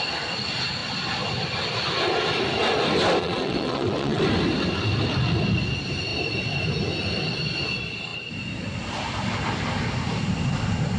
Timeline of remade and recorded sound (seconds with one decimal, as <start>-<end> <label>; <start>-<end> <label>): 0.0-3.2 recorded; 3.2-4.2 remade; 4.2-11.0 recorded